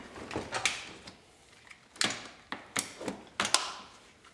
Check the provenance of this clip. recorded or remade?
recorded